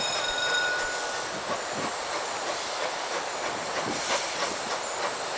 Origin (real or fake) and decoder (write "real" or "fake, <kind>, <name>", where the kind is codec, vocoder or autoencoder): fake, vocoder, BigVGAN v2